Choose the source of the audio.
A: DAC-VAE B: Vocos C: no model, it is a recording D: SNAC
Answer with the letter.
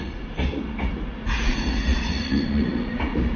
B